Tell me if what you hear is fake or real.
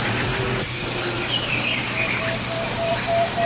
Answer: fake